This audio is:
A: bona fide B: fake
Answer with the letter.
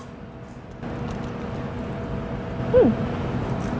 A